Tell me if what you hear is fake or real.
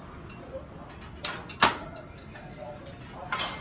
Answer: real